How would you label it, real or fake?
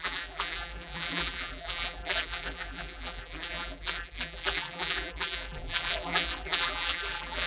fake